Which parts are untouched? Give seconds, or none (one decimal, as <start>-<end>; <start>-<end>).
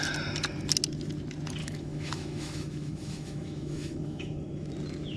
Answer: 0.0-1.6; 4.7-5.2